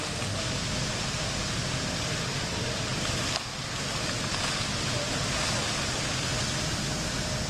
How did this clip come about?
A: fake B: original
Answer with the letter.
B